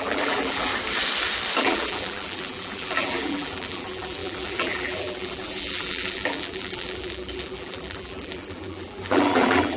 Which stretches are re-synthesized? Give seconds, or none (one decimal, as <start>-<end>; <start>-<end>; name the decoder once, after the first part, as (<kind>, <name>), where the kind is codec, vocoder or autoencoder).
0.0-0.7 (vocoder, BigVGAN v2); 1.6-9.8